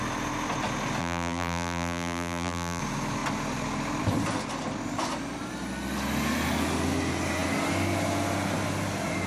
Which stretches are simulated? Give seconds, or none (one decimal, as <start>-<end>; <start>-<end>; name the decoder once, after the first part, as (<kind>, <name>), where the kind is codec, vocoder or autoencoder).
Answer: 1.0-2.8 (vocoder, BigVGAN v2)